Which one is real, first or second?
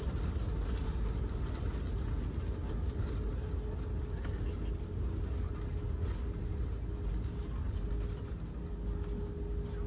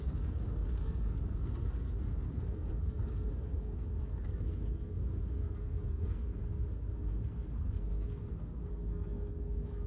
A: first